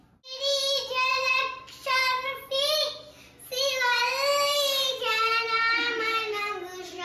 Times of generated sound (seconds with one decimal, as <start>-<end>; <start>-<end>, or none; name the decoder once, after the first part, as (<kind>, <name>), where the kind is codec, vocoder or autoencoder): 1.1-2.5 (vocoder, BigVGAN v2)